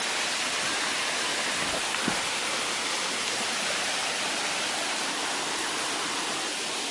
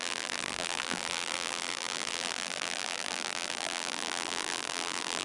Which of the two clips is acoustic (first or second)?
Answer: first